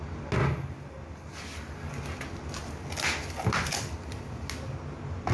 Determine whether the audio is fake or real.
real